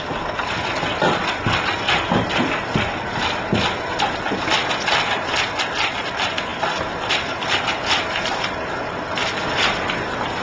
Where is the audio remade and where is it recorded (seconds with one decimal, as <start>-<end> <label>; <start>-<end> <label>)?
0.0-10.4 recorded